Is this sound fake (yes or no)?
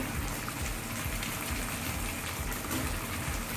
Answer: no